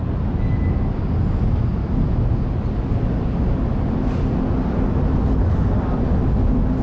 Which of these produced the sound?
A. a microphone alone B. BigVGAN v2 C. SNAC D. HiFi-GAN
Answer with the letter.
A